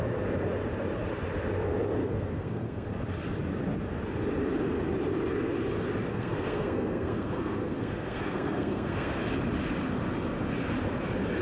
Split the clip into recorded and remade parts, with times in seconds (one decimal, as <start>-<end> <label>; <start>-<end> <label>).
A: 0.0-2.0 recorded; 2.0-2.9 remade; 2.9-6.1 recorded; 6.1-9.2 remade; 9.2-11.4 recorded